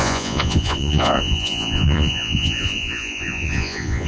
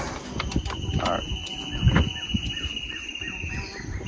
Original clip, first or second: second